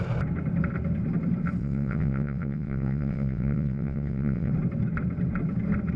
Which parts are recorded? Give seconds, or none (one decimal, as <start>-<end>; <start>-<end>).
0.0-1.6; 4.5-6.0